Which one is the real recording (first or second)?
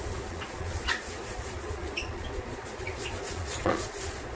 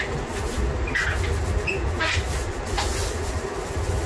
second